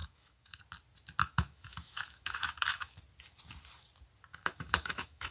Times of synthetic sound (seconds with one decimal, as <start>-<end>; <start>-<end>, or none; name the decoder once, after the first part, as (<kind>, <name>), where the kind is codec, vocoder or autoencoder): 0.0-0.6 (autoencoder, DAC-VAE); 1.2-3.0; 4.3-5.3